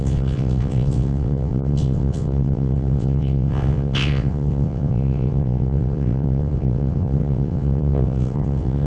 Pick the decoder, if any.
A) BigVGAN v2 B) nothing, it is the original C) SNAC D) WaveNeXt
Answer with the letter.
D